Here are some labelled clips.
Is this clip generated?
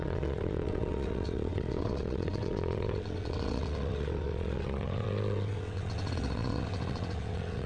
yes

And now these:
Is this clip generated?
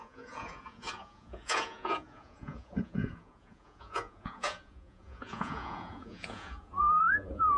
yes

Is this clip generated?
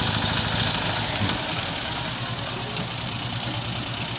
no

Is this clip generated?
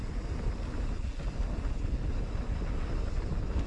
no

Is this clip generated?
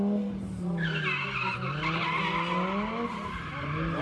no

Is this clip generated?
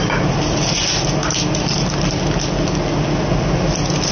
no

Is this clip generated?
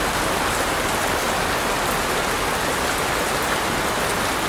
no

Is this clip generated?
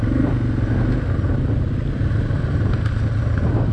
no